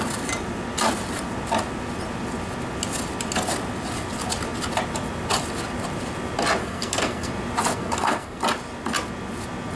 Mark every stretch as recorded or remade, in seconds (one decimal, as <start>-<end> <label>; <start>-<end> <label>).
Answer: 0.0-6.6 recorded; 6.6-7.3 remade; 7.3-7.7 recorded; 7.7-8.4 remade; 8.4-9.8 recorded